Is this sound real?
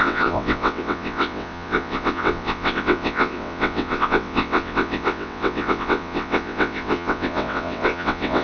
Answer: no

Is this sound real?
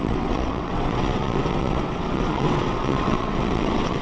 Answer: no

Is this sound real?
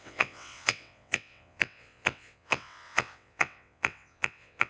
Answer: no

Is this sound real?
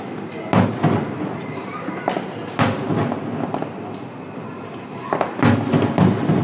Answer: yes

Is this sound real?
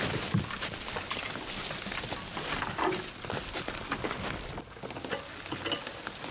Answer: yes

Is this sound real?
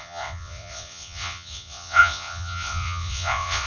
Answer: no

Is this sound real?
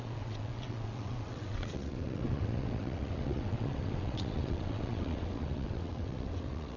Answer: no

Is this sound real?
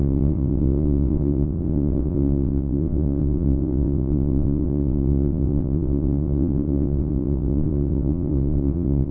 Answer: no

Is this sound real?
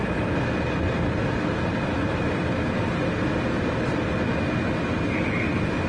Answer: yes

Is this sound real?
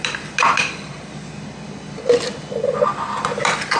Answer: yes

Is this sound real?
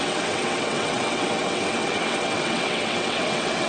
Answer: no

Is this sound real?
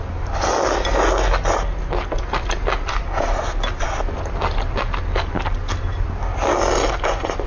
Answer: yes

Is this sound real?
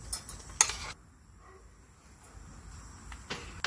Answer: yes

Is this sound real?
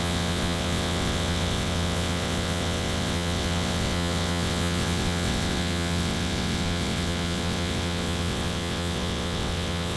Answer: no